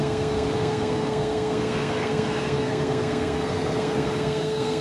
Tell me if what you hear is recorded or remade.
remade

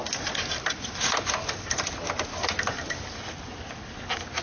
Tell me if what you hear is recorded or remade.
recorded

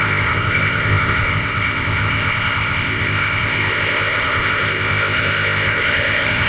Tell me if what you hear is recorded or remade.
remade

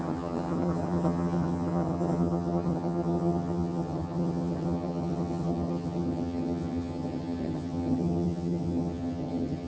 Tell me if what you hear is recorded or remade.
remade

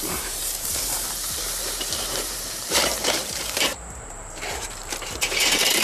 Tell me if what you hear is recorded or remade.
remade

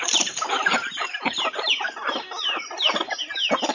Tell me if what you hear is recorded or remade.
remade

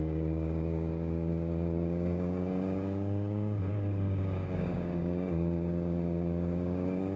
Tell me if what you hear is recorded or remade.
remade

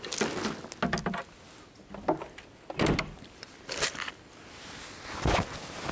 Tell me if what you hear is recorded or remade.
recorded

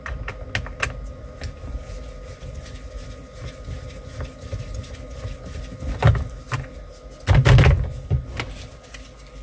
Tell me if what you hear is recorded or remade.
recorded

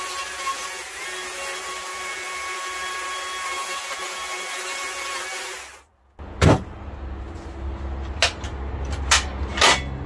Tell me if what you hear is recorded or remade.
recorded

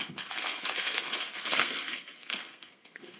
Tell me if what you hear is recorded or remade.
remade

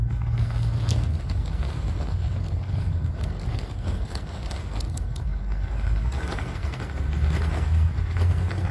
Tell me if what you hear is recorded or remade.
remade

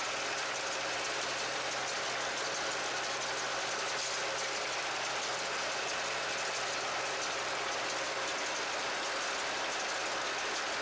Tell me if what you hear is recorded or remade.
recorded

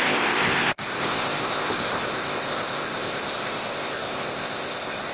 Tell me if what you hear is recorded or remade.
remade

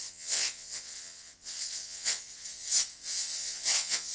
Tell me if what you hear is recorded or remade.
remade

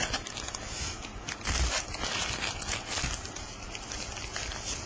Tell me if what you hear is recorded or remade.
recorded